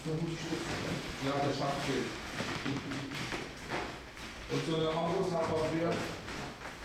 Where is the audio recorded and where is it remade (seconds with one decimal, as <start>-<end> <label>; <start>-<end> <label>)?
0.0-4.8 recorded; 4.8-5.5 remade; 5.5-6.8 recorded